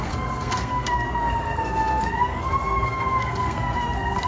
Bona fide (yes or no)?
no